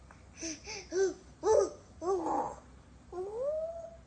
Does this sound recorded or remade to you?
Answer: recorded